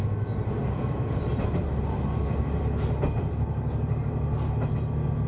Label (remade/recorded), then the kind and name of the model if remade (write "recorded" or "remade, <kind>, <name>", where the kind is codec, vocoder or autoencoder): recorded